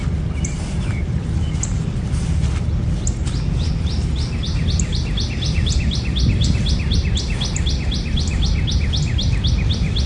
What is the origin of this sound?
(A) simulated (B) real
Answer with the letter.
B